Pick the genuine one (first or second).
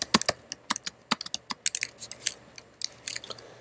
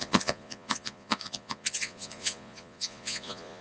first